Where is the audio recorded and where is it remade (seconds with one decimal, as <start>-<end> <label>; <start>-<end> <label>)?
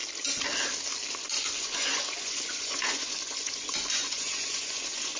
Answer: 0.0-1.2 recorded; 1.2-5.2 remade